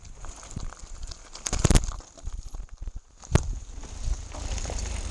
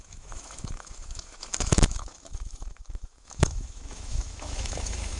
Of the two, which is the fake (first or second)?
second